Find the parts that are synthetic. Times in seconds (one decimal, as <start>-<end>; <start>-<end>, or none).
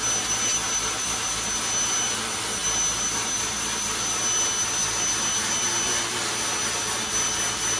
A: none